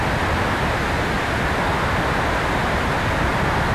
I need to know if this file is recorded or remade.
recorded